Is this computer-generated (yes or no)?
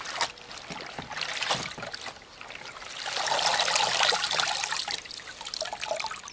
no